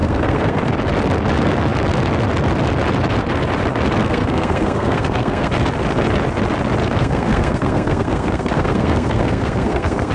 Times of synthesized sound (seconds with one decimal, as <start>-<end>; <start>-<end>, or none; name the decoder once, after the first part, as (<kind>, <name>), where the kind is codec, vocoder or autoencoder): 0.0-0.6 (codec, SNAC); 4.0-5.5; 6.8-10.1